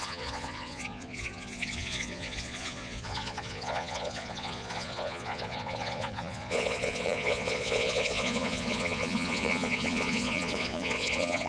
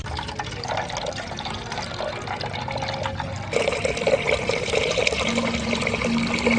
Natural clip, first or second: second